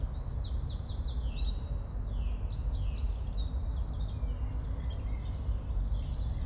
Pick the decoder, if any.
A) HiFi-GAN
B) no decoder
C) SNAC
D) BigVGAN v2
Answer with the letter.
B